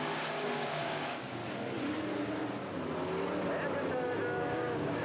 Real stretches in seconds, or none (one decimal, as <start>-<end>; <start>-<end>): 1.4-4.4